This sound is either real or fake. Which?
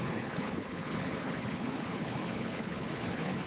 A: fake